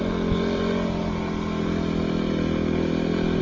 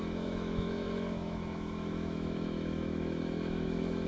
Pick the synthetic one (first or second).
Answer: second